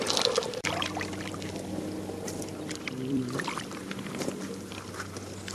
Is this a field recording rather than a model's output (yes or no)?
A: no